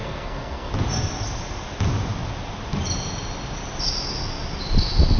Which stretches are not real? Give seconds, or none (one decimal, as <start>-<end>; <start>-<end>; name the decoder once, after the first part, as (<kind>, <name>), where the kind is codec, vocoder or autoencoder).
0.0-0.7 (codec, SNAC)